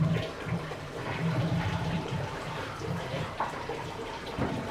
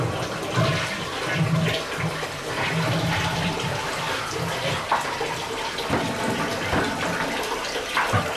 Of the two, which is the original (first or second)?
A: second